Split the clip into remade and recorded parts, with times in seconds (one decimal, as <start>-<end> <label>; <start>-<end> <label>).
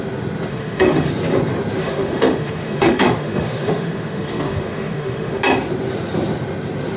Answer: 0.0-0.5 recorded; 0.5-1.1 remade; 1.1-1.8 recorded; 1.8-5.4 remade; 5.4-7.0 recorded